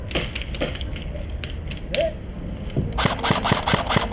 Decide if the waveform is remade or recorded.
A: recorded